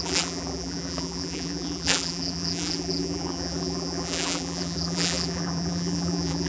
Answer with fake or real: fake